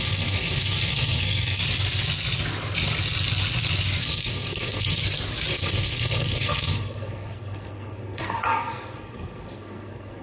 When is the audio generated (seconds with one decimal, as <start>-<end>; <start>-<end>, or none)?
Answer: 0.0-1.6; 4.0-5.0; 5.5-10.2